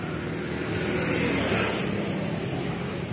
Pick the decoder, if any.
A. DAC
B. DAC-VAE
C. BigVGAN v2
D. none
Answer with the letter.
D